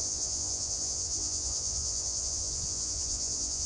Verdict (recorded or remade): remade